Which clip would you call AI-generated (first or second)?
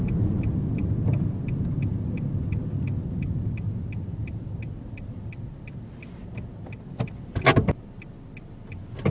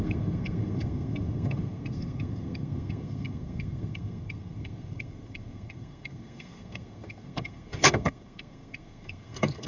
second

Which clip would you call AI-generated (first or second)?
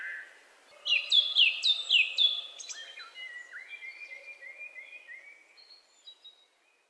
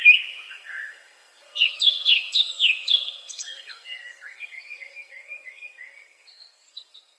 second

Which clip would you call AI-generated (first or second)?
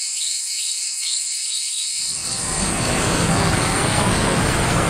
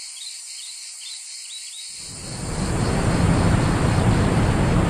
first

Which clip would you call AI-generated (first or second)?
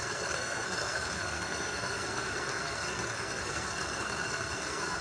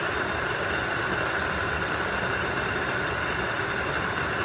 first